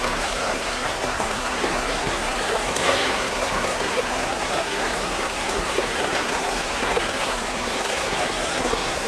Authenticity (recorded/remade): remade